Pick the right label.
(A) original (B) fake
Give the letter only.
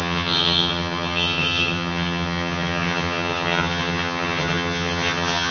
B